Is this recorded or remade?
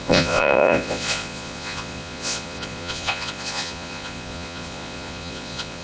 remade